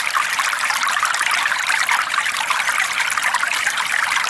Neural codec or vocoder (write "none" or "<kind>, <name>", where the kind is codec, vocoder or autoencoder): vocoder, BigVGAN v2